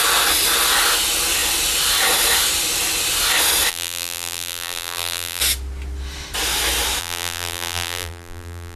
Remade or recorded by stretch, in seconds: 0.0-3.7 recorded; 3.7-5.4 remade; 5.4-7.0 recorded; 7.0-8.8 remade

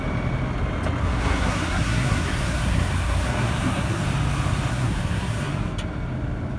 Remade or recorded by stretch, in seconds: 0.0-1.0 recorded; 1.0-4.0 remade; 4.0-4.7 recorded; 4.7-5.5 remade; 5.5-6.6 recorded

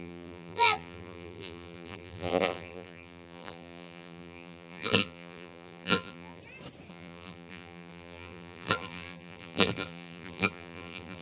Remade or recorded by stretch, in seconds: 0.0-6.4 remade; 6.4-6.9 recorded; 6.9-11.2 remade

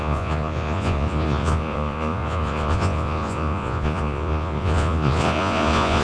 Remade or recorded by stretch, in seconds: 0.0-6.0 remade

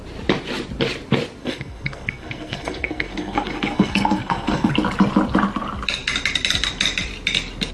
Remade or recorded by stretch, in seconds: 0.0-1.4 recorded; 1.4-4.7 remade; 4.7-7.7 recorded

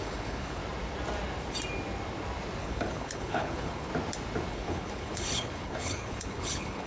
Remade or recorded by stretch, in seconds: 0.0-0.6 remade; 0.6-2.6 recorded; 2.6-3.9 remade; 3.9-4.5 recorded; 4.5-6.9 remade